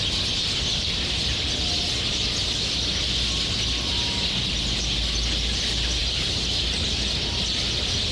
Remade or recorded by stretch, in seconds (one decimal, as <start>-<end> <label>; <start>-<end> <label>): 0.0-8.1 recorded